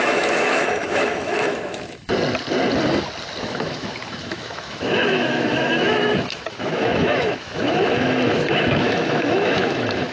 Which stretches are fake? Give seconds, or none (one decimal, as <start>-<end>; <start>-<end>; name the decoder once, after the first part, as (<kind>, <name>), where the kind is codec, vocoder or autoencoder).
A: 0.0-2.1 (autoencoder, DAC-VAE); 3.4-10.1